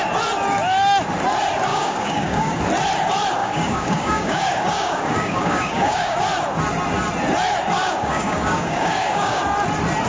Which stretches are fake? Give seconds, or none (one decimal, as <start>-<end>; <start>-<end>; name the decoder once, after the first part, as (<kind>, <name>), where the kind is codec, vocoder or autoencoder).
1.7-2.6 (codec, DAC); 3.4-6.2; 7.8-9.4